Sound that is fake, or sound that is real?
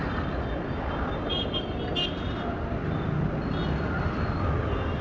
real